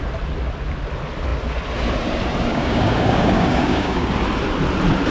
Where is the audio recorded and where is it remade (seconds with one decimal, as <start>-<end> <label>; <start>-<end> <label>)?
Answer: 0.0-2.5 recorded; 2.5-4.1 remade; 4.1-5.1 recorded